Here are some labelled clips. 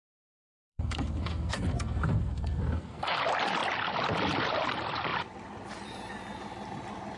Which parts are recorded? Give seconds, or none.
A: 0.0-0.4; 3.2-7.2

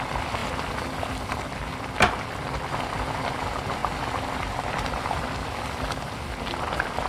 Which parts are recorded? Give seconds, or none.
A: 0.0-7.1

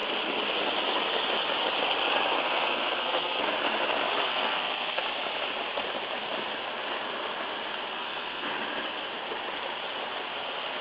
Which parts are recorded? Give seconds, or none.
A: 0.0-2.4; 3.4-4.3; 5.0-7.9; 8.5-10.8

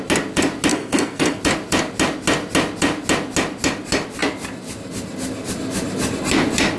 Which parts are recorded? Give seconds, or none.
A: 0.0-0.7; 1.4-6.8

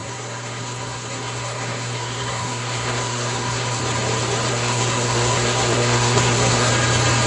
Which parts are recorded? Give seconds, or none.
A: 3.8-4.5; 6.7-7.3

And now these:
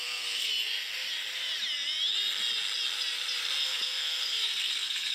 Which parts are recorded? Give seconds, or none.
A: 0.5-3.6

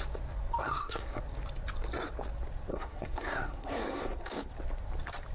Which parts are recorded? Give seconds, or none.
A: 0.0-0.6; 1.2-2.7; 4.3-5.3